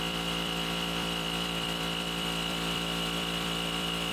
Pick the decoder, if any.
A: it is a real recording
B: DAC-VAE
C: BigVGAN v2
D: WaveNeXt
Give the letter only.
C